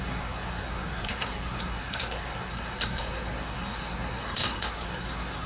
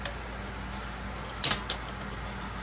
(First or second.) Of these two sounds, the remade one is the first